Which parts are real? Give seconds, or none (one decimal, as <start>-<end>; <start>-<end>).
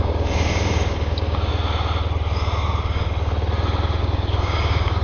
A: 1.5-4.0